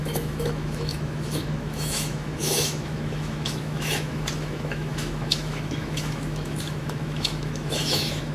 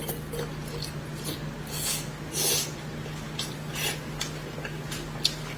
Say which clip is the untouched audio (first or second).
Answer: second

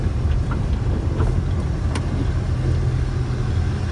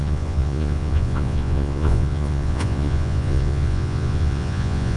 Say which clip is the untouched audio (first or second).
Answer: first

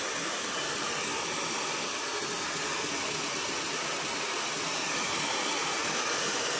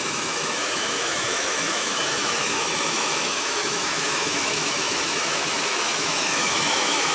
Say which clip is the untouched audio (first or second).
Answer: first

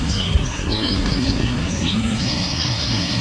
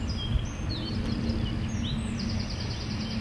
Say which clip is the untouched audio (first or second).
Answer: second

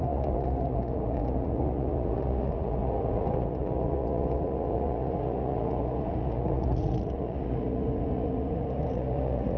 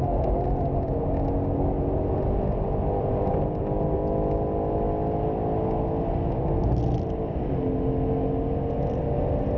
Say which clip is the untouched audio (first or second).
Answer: second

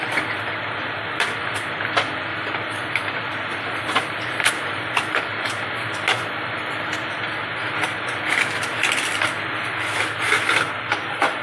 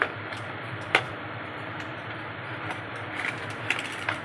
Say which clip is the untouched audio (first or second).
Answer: first